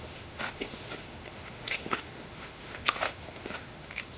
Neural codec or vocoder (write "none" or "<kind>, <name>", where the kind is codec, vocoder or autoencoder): autoencoder, DAC-VAE